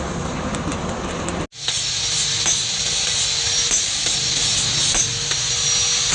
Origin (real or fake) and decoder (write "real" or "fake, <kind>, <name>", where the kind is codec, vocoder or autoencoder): real